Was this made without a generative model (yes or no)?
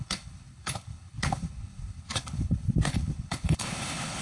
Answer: no